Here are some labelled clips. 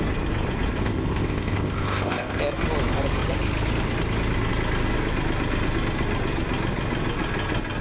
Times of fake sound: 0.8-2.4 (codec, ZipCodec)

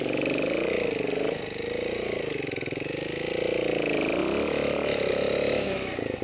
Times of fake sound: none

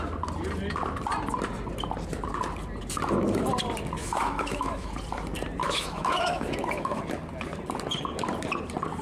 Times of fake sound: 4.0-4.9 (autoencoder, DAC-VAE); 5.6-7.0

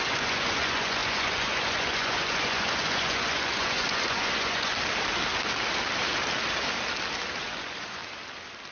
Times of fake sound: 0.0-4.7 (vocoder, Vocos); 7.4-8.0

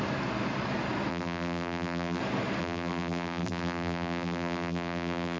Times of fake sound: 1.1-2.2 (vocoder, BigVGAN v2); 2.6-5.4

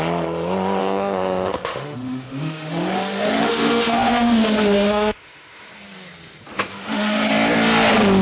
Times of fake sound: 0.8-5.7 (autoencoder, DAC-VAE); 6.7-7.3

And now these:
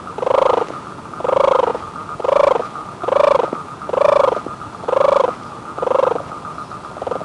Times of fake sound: none

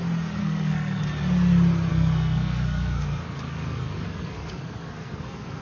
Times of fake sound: 0.4-1.0 (codec, SNAC); 1.9-5.6